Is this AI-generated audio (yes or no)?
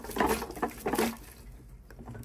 no